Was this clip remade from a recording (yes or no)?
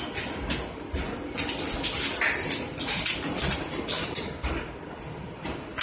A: no